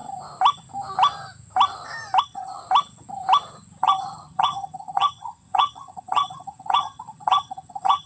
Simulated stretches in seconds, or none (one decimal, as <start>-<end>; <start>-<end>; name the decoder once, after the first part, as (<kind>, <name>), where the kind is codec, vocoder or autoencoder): 2.2-2.6 (vocoder, HiFi-GAN); 3.8-8.1